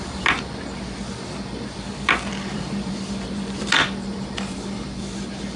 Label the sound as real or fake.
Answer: fake